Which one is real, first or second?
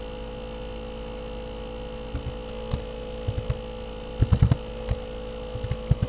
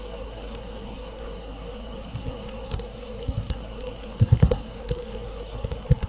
first